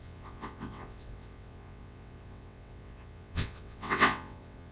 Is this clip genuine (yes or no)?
no